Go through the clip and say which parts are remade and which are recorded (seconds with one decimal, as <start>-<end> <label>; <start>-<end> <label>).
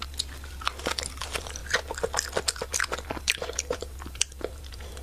0.0-1.6 remade; 1.6-3.7 recorded; 3.7-5.0 remade